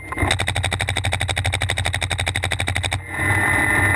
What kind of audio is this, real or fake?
real